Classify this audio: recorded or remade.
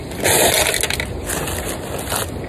recorded